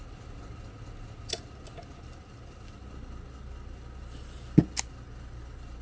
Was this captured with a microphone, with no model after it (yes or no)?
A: yes